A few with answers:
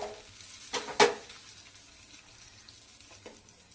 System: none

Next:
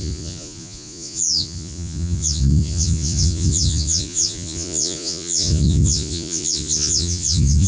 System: vocoder, Vocos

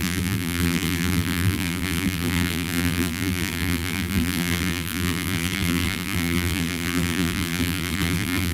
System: vocoder, BigVGAN v2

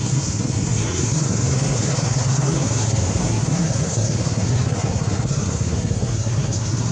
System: codec, SNAC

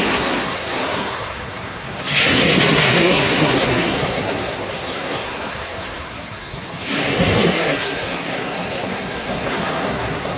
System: codec, SNAC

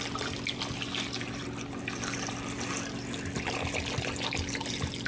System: none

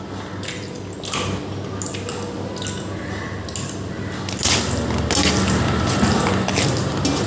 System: none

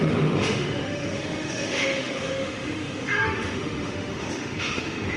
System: autoencoder, DAC-VAE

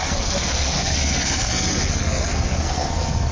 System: codec, SNAC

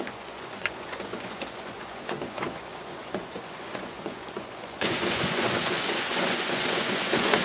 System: vocoder, Vocos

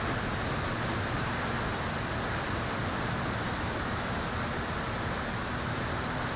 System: none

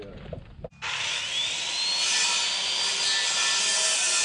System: none